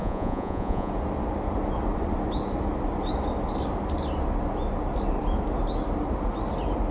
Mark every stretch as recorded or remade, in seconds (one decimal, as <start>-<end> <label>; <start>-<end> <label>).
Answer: 0.0-0.9 remade; 0.9-6.9 recorded